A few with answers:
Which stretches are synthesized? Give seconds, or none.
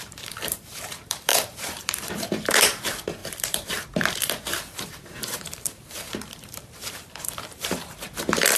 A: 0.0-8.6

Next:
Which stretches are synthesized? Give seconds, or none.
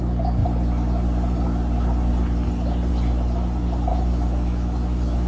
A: 3.9-5.3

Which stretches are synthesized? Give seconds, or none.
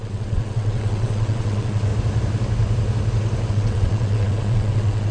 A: 0.0-1.9; 3.5-5.1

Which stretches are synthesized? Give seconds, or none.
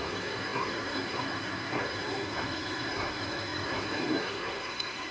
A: 0.0-5.1